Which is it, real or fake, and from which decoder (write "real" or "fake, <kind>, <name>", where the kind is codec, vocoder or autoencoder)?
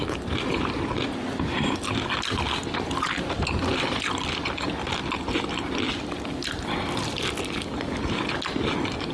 real